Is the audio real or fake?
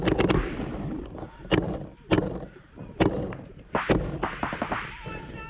real